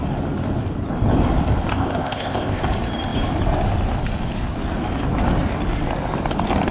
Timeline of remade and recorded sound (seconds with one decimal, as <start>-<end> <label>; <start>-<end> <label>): 0.0-1.7 recorded; 1.7-2.6 remade; 2.6-6.7 recorded

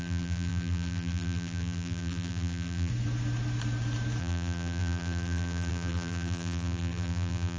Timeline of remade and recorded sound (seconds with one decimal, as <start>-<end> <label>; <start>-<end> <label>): 0.0-2.9 remade; 2.9-4.2 recorded; 4.2-7.6 remade

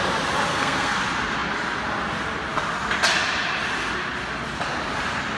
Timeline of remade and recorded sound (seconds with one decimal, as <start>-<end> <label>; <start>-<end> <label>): 0.0-0.5 recorded; 0.5-1.0 remade; 1.0-5.4 recorded